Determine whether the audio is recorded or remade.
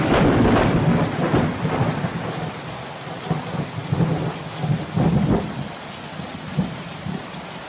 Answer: recorded